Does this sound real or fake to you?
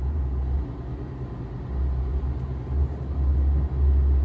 real